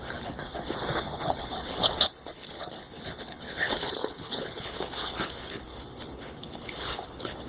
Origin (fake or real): fake